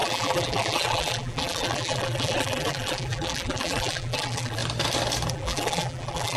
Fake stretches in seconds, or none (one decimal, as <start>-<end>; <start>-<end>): 0.0-4.6; 5.3-6.4